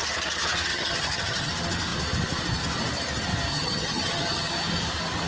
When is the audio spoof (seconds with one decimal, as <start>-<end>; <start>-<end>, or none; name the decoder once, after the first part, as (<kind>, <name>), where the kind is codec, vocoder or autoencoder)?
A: 0.7-1.5 (vocoder, HiFi-GAN); 3.5-4.5